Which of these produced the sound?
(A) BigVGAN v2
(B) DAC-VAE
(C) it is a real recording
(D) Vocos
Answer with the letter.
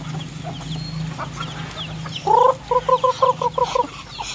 C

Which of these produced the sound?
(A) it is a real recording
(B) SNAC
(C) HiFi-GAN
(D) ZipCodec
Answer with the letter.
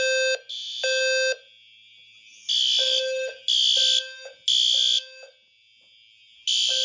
A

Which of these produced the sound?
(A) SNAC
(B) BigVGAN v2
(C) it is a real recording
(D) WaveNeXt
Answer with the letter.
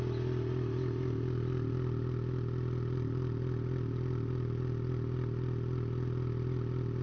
C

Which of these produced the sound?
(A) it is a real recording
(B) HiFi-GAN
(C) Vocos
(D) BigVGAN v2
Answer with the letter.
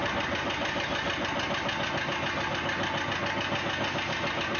A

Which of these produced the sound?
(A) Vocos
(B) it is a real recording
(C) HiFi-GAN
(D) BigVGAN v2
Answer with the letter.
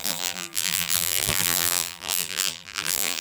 D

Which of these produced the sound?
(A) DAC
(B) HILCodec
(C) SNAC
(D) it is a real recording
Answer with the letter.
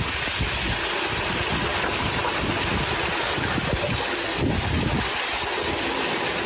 D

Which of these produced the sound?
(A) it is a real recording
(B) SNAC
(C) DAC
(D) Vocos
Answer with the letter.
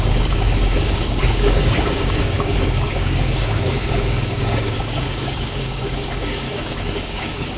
C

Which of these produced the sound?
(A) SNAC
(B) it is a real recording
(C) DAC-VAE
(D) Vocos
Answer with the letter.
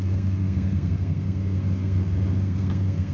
A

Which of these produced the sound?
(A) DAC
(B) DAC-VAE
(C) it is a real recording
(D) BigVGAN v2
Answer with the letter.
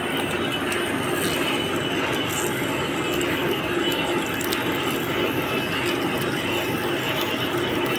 C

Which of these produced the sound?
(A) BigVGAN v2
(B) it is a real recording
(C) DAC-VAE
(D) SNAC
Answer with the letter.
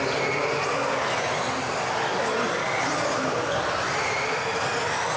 B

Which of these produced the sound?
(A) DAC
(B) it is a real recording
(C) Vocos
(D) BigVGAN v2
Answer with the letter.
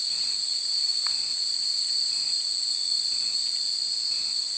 D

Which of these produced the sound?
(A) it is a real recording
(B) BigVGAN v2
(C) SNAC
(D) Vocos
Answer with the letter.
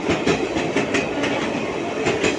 A